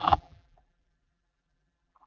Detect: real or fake fake